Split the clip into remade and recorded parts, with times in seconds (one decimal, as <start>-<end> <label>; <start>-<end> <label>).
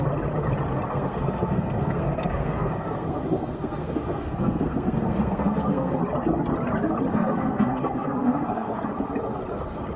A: 0.0-0.9 recorded; 0.9-6.0 remade; 6.0-7.1 recorded; 7.1-8.9 remade; 8.9-10.0 recorded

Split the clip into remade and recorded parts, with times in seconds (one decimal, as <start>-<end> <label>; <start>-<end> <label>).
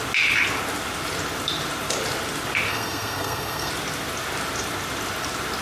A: 0.0-2.7 recorded; 2.7-3.7 remade; 3.7-5.6 recorded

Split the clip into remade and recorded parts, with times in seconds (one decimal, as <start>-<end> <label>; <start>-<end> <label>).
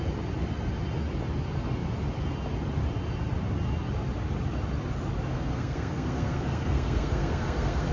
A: 0.0-5.3 recorded; 5.3-7.9 remade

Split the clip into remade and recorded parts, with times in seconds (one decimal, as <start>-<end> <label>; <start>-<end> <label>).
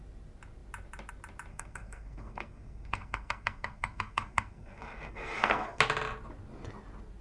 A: 0.0-1.5 recorded; 1.5-5.8 remade; 5.8-7.2 recorded